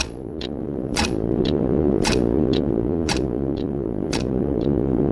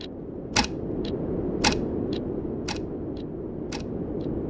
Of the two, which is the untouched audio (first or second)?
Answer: second